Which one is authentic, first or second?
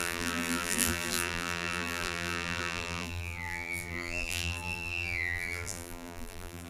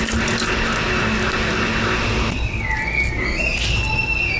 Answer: second